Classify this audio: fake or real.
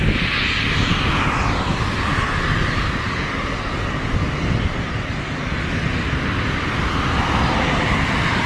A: real